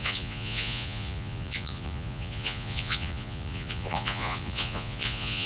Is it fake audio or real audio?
fake